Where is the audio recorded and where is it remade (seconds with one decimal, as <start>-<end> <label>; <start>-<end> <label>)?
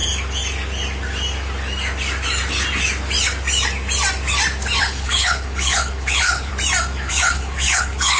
0.0-4.8 recorded; 4.8-6.5 remade; 6.5-7.1 recorded; 7.1-8.2 remade